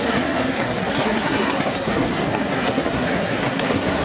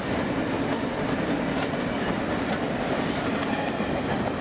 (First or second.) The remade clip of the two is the first